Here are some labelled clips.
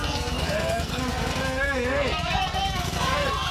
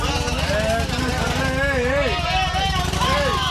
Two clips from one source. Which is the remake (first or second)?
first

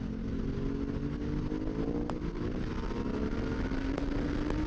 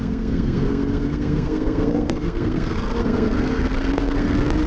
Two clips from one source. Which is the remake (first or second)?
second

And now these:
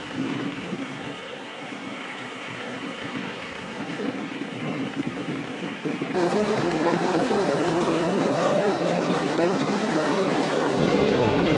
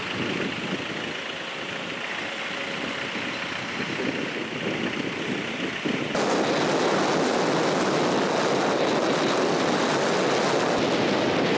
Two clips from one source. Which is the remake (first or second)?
first